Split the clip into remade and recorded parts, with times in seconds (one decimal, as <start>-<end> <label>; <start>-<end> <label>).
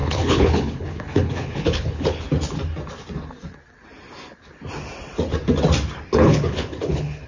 0.0-2.2 remade; 2.2-6.1 recorded; 6.1-7.3 remade